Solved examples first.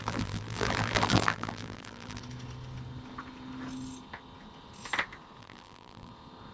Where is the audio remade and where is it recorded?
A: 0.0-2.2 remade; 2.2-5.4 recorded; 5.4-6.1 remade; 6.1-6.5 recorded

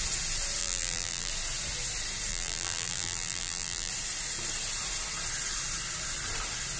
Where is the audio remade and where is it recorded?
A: 0.0-0.6 recorded; 0.6-1.3 remade; 1.3-2.3 recorded; 2.3-3.9 remade; 3.9-6.8 recorded

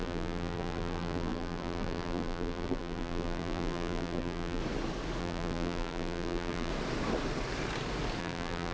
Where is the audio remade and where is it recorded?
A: 0.0-4.6 remade; 4.6-5.2 recorded; 5.2-6.7 remade; 6.7-8.2 recorded; 8.2-8.7 remade

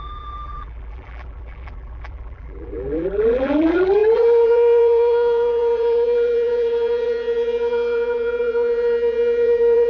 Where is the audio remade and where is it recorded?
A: 0.0-9.9 remade

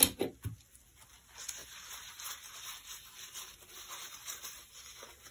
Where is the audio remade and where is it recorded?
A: 0.0-1.6 recorded; 1.6-4.7 remade; 4.7-5.3 recorded

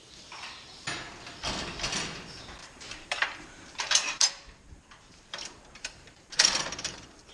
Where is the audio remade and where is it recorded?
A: 0.0-2.6 recorded; 2.6-7.3 remade

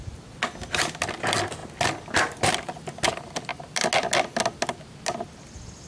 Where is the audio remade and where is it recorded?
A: 0.0-5.9 recorded

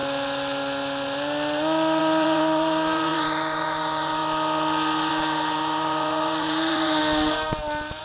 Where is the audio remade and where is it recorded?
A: 0.0-2.0 recorded; 2.0-4.2 remade; 4.2-5.1 recorded; 5.1-7.0 remade; 7.0-8.0 recorded